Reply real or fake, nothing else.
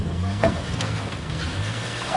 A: fake